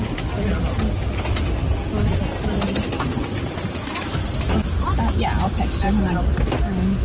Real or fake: real